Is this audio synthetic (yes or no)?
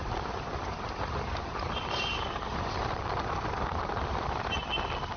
no